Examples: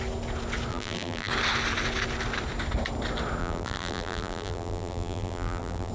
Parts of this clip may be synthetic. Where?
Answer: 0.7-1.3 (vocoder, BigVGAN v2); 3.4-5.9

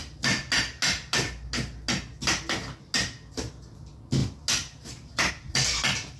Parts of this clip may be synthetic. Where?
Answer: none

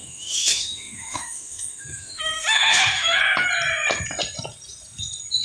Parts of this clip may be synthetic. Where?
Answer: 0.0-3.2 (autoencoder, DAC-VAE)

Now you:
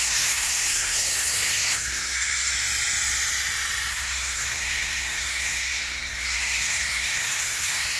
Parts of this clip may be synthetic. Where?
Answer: 0.0-2.5 (codec, SNAC); 3.9-8.0